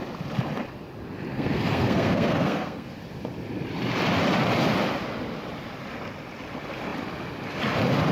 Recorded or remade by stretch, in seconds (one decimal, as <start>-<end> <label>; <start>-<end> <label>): 0.0-1.3 recorded; 1.3-3.0 remade; 3.0-8.1 recorded